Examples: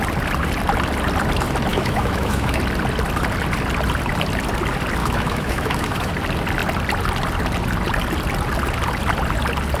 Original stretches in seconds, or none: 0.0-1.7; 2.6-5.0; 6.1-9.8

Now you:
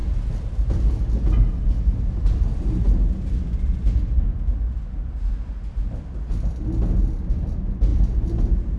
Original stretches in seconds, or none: 0.0-8.8

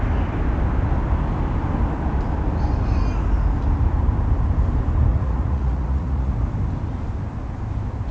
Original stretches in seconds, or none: 0.0-5.1; 6.3-8.1

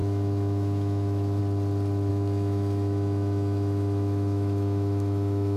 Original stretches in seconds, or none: 1.4-2.1

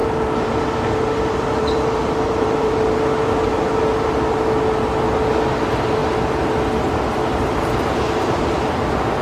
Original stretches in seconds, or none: 4.1-9.2

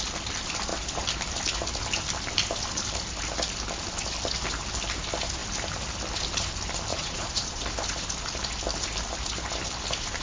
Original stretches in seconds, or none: 0.0-6.9; 7.6-10.2

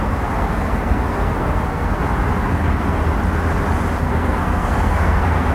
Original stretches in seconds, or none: 2.0-2.5; 3.0-4.0

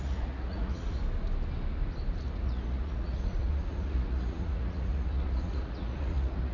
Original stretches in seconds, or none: 1.0-2.2